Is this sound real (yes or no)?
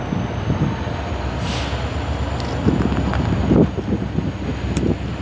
yes